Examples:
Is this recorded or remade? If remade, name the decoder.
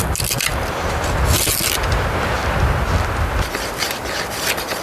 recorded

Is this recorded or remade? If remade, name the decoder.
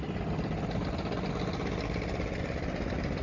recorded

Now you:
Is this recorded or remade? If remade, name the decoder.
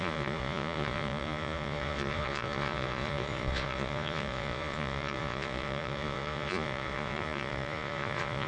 remade, vocoder, Vocos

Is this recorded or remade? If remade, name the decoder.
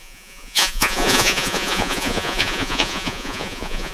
remade, vocoder, Vocos